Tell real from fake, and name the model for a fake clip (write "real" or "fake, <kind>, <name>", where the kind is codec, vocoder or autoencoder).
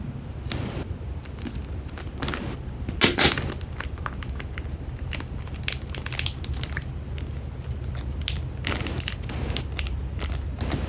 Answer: real